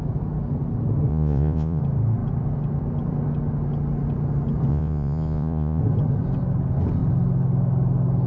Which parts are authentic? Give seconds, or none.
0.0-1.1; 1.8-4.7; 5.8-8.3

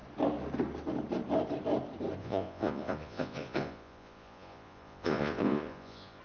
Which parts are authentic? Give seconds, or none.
0.0-2.2

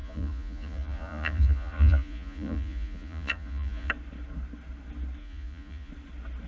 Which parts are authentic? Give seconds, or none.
3.9-5.2; 5.9-6.5

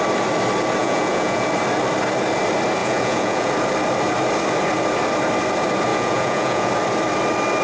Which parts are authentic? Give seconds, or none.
0.0-0.8; 1.5-2.8; 3.5-5.9; 6.7-7.6

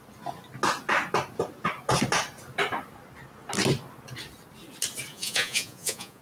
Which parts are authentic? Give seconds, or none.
0.0-5.1

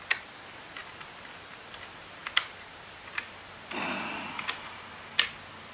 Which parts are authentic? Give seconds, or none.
0.0-5.7

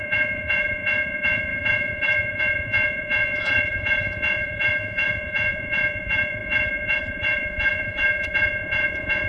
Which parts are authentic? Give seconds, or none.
none

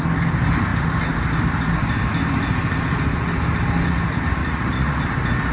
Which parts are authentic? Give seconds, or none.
0.0-4.4; 5.0-5.5